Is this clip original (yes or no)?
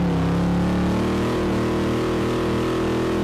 yes